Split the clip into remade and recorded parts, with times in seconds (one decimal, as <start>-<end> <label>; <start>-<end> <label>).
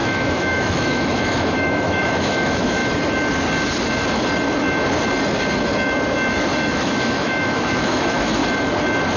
0.0-2.8 remade; 2.8-6.7 recorded; 6.7-8.4 remade; 8.4-9.2 recorded